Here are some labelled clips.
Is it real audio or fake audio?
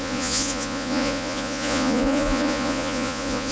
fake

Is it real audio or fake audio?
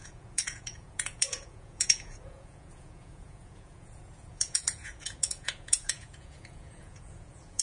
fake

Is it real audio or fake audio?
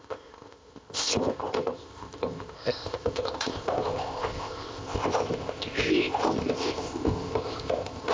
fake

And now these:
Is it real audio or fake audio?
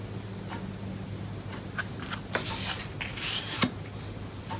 real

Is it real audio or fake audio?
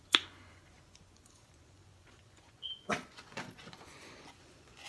fake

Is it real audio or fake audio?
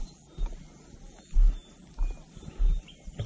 real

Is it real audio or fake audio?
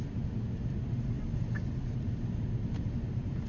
real